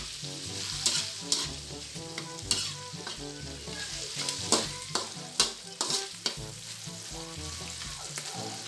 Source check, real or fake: real